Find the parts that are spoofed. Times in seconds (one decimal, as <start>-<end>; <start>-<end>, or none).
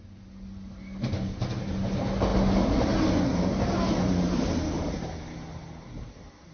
none